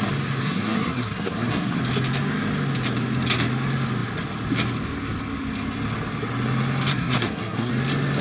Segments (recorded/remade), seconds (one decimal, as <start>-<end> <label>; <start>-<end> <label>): 0.0-0.4 recorded; 0.4-1.8 remade; 1.8-6.9 recorded; 6.9-7.7 remade; 7.7-8.2 recorded